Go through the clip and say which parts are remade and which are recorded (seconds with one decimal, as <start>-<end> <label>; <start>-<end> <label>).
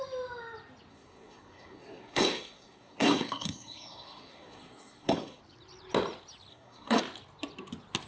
0.0-0.9 recorded; 0.9-5.4 remade; 5.4-6.5 recorded; 6.5-7.0 remade; 7.0-8.1 recorded